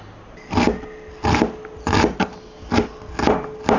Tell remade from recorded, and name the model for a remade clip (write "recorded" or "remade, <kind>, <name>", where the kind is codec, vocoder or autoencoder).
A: recorded